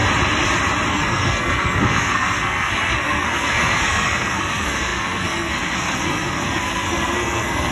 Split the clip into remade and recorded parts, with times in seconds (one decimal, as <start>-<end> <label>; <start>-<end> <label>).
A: 0.0-0.9 recorded; 0.9-7.7 remade